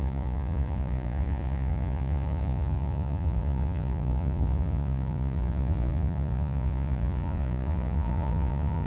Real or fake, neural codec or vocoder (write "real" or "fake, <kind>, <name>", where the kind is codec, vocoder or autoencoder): fake, vocoder, Vocos